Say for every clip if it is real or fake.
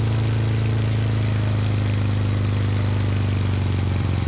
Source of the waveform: real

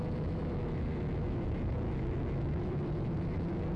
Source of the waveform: fake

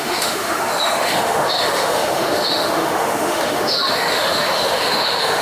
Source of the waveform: fake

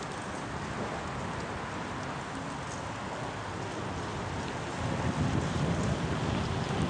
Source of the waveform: real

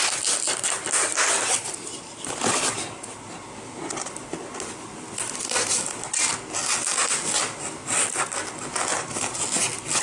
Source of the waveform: real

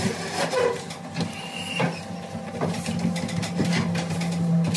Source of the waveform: real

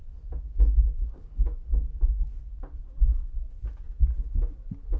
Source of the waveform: real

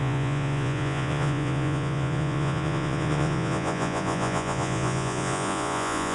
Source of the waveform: fake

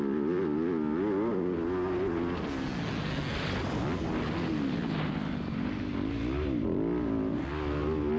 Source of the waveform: real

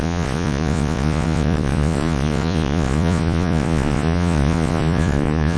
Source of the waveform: fake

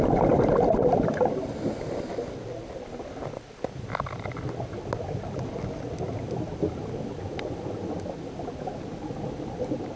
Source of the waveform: real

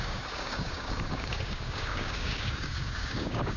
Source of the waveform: fake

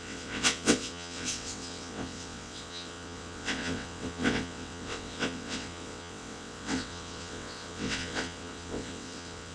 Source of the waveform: fake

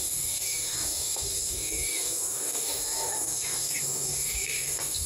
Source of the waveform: fake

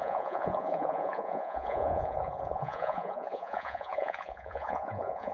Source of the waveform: fake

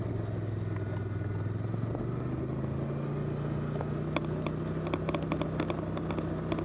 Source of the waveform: real